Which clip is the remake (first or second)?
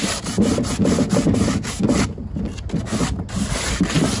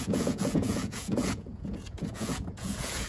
second